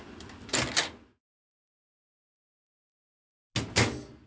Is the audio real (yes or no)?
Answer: yes